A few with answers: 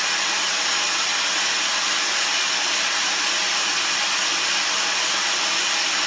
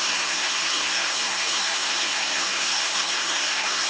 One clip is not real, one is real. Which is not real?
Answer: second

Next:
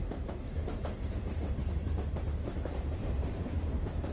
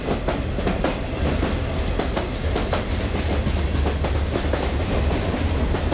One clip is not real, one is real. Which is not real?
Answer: first